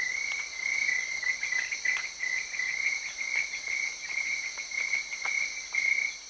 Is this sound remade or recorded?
recorded